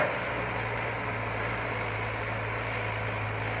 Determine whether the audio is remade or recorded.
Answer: recorded